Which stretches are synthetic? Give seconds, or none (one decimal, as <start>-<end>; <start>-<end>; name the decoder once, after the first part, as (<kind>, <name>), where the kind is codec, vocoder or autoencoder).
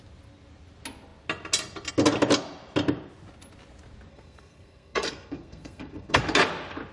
4.1-6.2 (codec, SNAC)